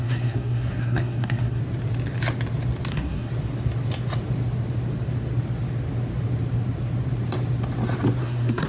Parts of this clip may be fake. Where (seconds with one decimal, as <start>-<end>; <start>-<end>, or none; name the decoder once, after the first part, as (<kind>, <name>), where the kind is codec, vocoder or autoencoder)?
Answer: 0.0-1.6 (codec, SNAC); 2.9-3.3; 8.2-8.7